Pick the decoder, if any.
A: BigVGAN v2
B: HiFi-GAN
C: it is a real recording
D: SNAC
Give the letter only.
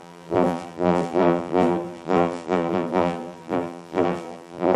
A